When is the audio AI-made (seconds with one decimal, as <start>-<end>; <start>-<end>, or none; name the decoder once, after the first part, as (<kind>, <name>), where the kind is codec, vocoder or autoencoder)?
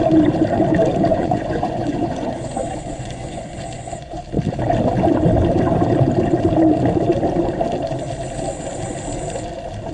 1.1-4.2 (vocoder, Vocos)